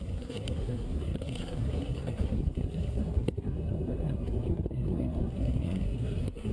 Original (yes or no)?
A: no